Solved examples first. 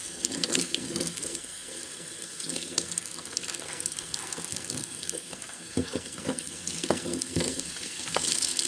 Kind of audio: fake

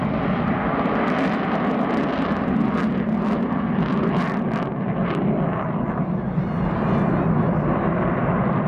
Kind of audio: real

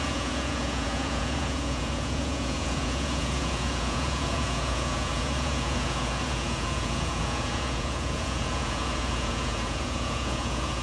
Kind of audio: fake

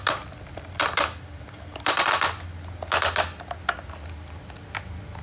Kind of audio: real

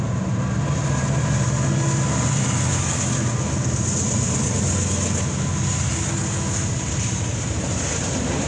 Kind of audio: real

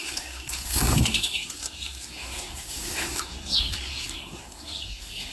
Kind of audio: fake